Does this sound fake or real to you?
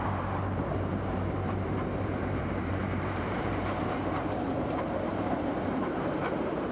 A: fake